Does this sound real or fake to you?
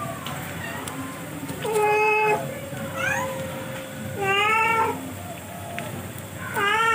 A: fake